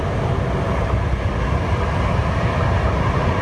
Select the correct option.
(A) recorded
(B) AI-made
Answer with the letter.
A